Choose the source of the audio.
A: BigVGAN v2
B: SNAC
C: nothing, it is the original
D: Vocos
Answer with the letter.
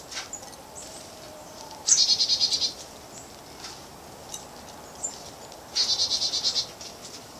C